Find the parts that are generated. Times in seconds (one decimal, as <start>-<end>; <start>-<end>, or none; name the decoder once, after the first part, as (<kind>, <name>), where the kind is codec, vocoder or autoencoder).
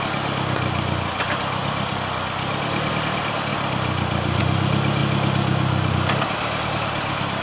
1.6-2.9 (vocoder, BigVGAN v2); 3.5-4.4